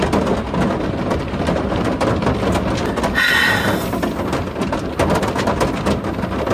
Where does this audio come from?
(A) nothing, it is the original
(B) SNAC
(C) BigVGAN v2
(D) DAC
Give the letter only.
A